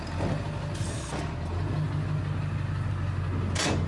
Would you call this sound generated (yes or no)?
no